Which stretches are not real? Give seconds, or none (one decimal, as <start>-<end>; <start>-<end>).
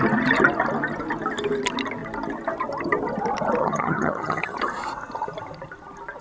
3.6-4.6